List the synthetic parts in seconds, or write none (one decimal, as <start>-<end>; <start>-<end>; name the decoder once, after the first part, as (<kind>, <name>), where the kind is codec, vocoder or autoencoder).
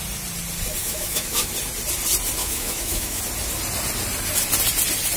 0.8-1.5 (autoencoder, DAC-VAE); 2.4-3.2